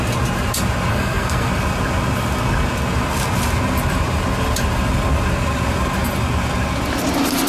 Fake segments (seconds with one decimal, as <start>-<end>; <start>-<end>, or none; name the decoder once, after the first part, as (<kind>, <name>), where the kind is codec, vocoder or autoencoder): 0.9-1.5 (codec, SNAC)